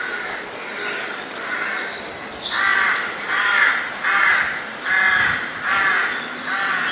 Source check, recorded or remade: recorded